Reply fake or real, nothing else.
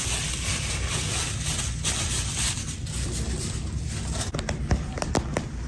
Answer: real